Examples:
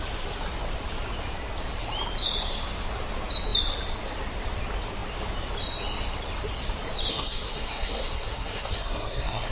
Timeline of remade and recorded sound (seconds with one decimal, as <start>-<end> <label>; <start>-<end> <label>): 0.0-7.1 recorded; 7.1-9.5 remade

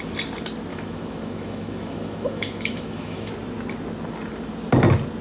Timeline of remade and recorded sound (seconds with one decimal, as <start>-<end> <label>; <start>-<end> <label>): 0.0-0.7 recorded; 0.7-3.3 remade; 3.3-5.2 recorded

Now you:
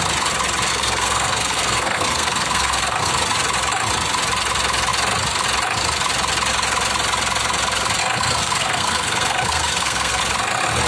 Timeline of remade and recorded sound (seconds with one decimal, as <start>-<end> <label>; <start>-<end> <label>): 0.0-0.7 recorded; 0.7-3.1 remade; 3.1-8.0 recorded; 8.0-10.2 remade; 10.2-10.9 recorded

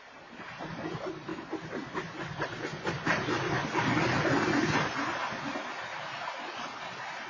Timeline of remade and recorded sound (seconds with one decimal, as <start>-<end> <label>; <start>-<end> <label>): 0.0-1.3 remade; 1.3-4.6 recorded; 4.6-5.2 remade; 5.2-6.1 recorded; 6.1-7.3 remade